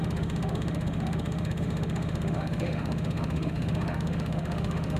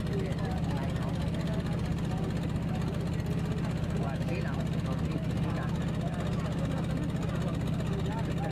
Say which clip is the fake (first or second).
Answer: first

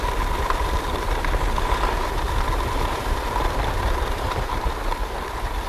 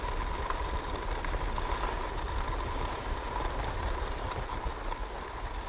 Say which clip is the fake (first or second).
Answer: first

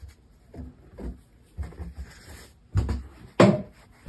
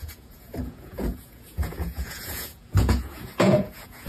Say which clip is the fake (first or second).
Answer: second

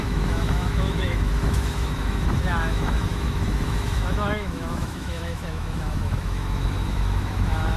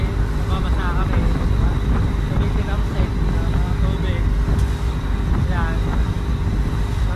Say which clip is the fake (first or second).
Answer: first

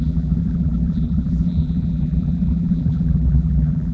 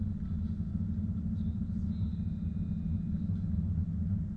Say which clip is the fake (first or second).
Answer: first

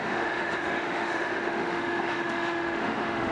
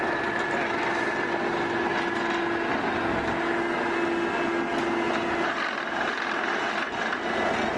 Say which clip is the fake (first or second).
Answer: first